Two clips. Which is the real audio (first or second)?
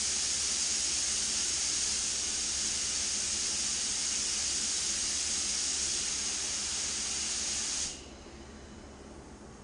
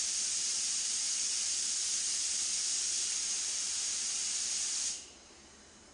first